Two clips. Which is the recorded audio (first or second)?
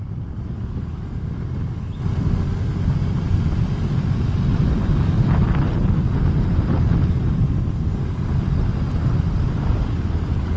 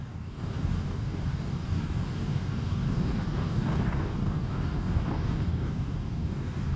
first